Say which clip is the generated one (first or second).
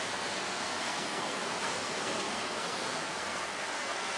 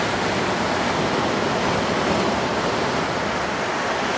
first